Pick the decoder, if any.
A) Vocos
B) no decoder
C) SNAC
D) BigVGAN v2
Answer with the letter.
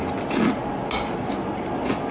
B